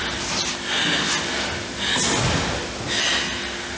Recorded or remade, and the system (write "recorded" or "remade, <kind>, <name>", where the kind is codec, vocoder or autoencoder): recorded